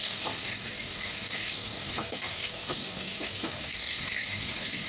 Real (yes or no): no